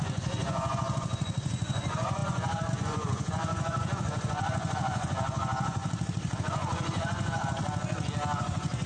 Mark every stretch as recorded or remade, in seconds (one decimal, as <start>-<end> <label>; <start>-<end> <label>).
0.0-5.8 remade; 5.8-6.4 recorded; 6.4-7.6 remade; 7.6-8.4 recorded; 8.4-8.9 remade